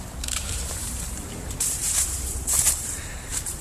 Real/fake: fake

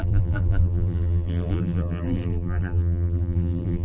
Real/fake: fake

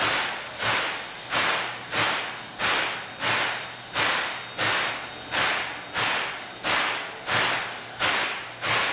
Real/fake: real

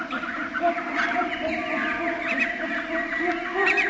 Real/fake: real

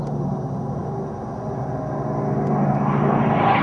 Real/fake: real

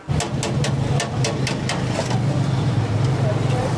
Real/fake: real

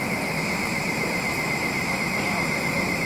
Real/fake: real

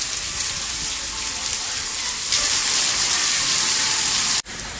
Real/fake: fake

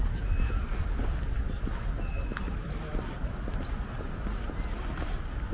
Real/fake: real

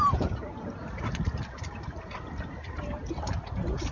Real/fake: fake